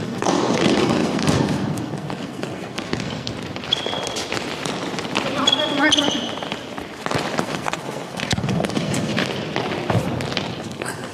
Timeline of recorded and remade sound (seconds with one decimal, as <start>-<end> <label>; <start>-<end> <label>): 0.0-3.3 remade; 3.3-7.4 recorded; 7.4-9.1 remade; 9.1-10.6 recorded; 10.6-11.1 remade